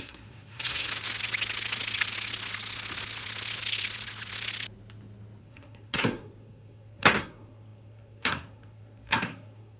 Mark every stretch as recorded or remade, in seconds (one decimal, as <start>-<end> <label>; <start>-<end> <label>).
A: 0.0-0.9 remade; 0.9-5.4 recorded; 5.4-9.8 remade